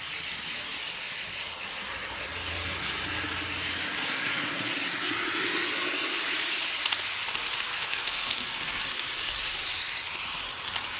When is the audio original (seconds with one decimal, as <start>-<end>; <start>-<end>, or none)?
0.0-7.7; 8.8-11.0

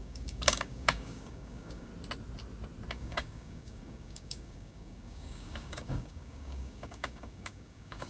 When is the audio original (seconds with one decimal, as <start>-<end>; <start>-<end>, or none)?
1.9-2.9